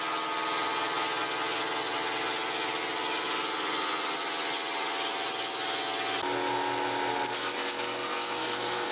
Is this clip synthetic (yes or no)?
no